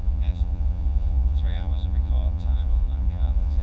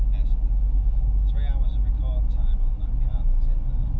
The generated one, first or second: first